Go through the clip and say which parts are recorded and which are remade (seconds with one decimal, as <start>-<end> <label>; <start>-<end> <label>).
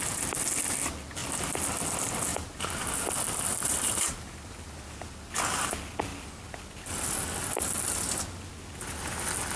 0.0-2.3 recorded; 2.3-2.9 remade; 2.9-3.5 recorded; 3.5-4.8 remade; 4.8-9.6 recorded